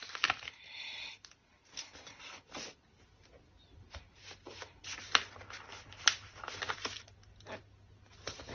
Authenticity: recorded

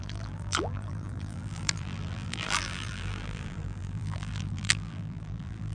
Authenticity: remade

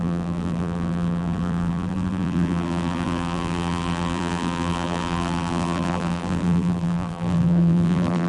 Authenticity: remade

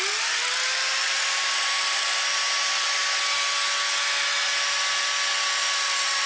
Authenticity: recorded